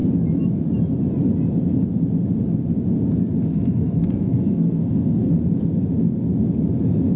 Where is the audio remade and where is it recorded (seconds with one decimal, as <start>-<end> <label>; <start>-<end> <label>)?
0.0-3.5 recorded; 3.5-5.3 remade; 5.3-7.2 recorded